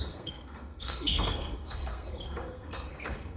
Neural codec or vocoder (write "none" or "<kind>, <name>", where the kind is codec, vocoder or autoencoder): codec, SNAC